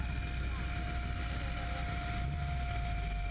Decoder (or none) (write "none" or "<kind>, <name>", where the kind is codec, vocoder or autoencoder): none